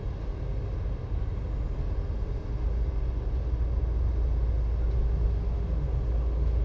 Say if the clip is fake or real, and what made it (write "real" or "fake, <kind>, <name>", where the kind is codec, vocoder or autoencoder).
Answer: real